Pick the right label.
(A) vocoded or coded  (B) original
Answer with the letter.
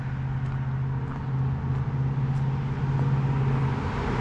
B